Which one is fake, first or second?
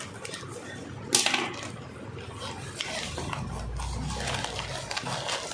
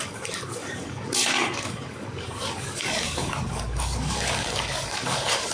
second